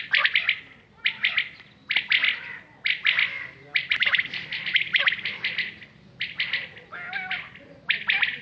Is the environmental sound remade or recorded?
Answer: recorded